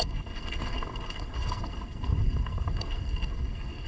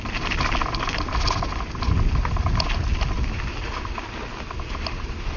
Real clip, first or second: second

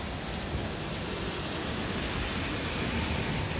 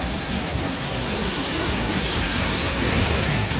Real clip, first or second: first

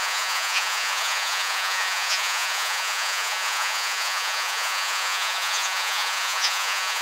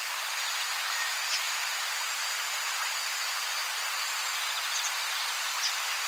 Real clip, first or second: second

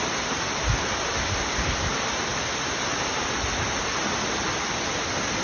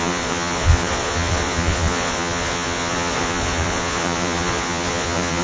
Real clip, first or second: first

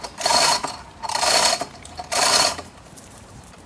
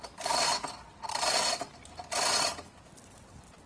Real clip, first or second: second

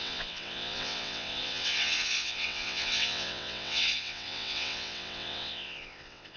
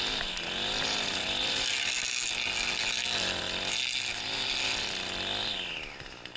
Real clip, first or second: second